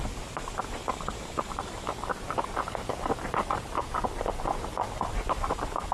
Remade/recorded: recorded